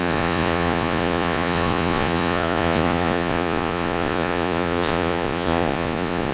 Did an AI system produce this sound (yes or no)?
yes